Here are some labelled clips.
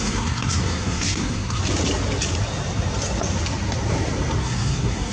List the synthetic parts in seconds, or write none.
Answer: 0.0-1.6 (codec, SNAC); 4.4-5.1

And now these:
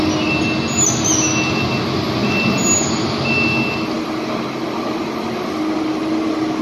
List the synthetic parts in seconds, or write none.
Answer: none

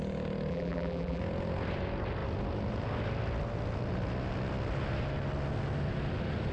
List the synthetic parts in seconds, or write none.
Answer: 0.5-1.2 (vocoder, BigVGAN v2)

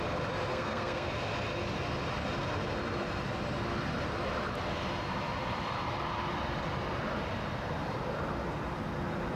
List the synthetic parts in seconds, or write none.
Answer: 0.5-1.1 (codec, SNAC)

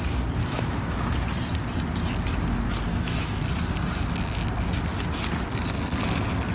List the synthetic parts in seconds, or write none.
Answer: 0.4-1.1 (autoencoder, DAC-VAE); 2.9-3.4